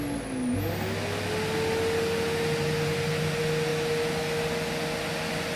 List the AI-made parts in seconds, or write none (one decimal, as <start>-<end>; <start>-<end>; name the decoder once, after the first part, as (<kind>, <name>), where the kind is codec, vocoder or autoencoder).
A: none